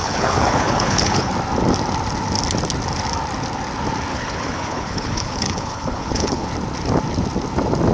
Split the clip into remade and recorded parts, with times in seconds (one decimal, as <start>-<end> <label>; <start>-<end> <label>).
0.0-1.3 remade; 1.3-4.1 recorded; 4.1-6.5 remade; 6.5-7.9 recorded